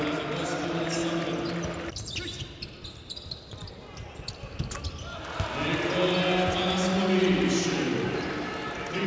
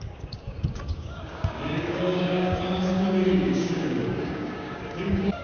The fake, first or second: second